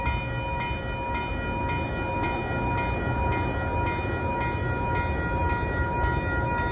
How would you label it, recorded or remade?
recorded